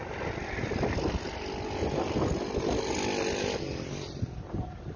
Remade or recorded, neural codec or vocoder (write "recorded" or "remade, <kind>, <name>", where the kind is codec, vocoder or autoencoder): recorded